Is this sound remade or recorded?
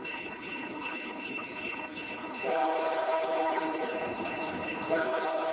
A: remade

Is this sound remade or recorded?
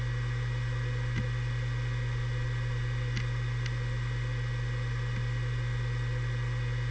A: recorded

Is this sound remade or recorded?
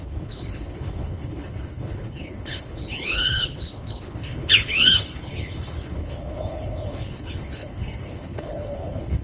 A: remade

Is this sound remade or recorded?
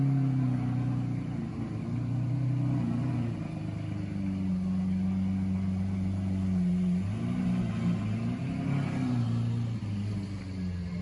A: recorded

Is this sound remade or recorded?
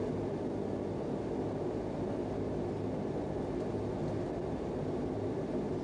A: recorded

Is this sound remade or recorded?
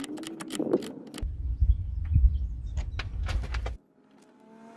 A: recorded